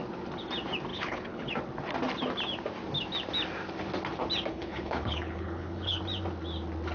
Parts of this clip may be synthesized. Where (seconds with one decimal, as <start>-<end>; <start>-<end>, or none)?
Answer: 0.9-1.5; 4.5-6.0